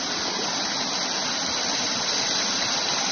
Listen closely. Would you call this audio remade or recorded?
recorded